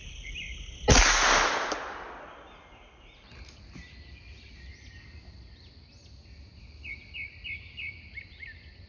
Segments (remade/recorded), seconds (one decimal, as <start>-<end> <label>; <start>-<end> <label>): 0.0-8.9 recorded